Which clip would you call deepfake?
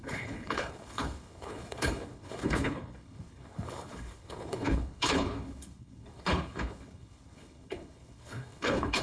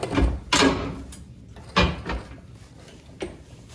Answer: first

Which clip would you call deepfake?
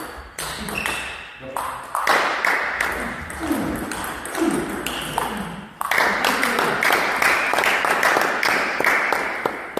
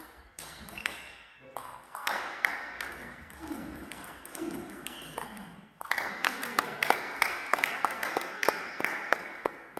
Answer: second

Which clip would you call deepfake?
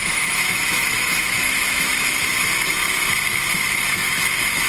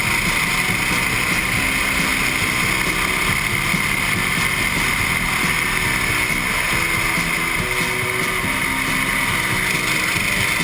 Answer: first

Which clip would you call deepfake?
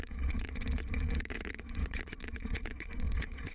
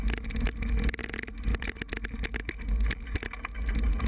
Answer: first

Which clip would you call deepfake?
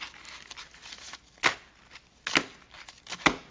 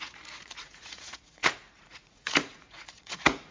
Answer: second